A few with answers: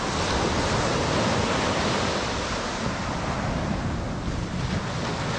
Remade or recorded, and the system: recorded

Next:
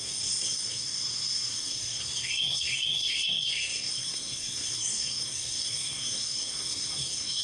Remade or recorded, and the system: remade, codec, SNAC